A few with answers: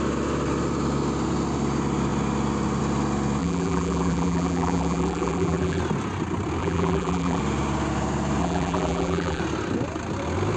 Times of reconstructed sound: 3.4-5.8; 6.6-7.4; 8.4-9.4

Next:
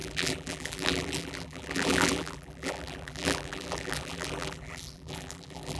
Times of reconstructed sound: 0.0-5.8